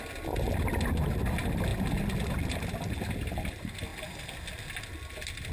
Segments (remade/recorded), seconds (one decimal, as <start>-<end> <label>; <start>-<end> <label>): 0.0-5.5 recorded

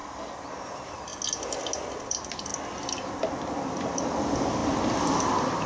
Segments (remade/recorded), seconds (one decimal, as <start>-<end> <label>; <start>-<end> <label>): 0.0-1.1 remade; 1.1-2.0 recorded; 2.0-2.5 remade; 2.5-3.1 recorded; 3.1-4.6 remade; 4.6-5.2 recorded; 5.2-5.7 remade

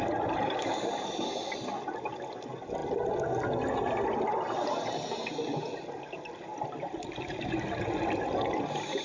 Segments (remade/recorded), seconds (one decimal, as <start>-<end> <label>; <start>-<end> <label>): 0.0-9.0 recorded

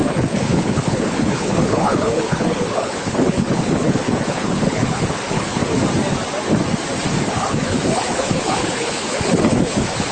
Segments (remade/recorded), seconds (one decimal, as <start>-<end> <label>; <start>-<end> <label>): 0.0-5.6 remade; 5.6-7.2 recorded; 7.2-10.1 remade